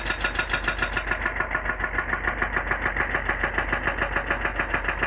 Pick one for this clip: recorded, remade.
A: recorded